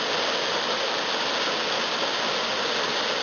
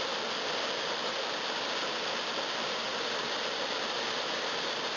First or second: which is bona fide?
first